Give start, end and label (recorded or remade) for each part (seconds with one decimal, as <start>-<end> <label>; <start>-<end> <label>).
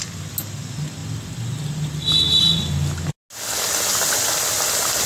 0.0-5.1 recorded